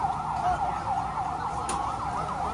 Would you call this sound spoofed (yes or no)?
no